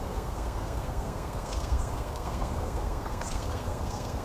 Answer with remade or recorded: remade